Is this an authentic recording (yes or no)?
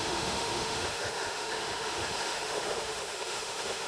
no